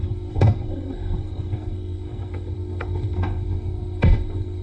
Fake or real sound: fake